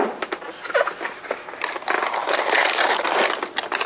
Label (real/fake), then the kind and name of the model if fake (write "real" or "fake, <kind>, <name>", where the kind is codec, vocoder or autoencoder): real